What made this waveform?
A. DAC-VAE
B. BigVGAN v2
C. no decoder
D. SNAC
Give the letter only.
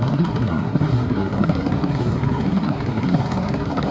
D